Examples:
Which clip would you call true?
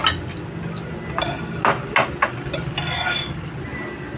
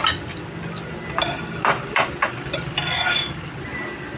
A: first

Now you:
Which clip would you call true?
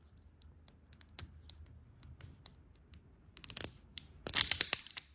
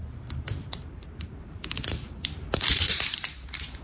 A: first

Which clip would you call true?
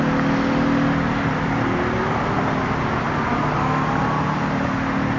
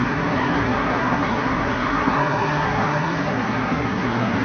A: first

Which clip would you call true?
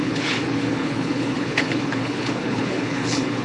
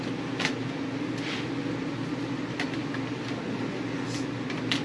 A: second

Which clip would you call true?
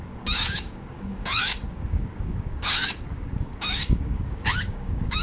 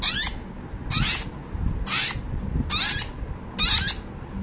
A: second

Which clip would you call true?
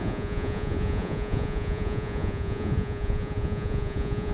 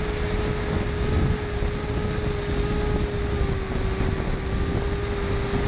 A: second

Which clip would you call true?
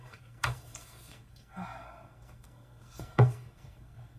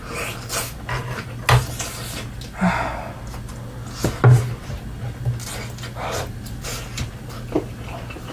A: second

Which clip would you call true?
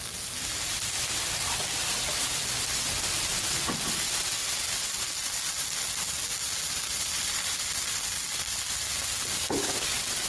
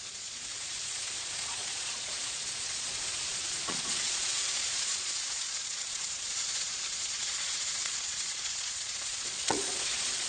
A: first